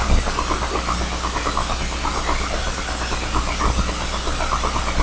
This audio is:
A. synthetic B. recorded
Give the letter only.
B